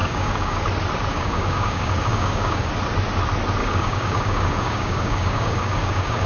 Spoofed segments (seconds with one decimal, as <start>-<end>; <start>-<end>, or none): 0.0-0.6; 1.1-2.7; 3.6-6.3